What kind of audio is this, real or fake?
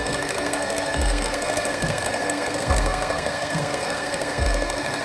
fake